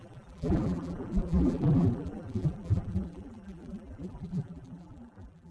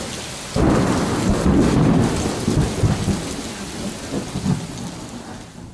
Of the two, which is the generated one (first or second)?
first